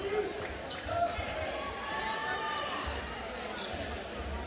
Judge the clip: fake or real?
real